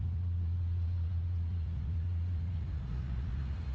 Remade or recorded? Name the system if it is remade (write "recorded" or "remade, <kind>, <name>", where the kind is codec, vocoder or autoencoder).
remade, vocoder, Vocos